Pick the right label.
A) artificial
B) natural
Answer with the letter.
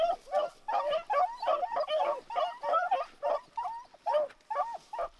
B